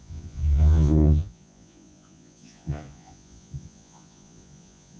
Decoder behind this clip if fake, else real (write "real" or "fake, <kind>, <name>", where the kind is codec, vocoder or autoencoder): fake, vocoder, Vocos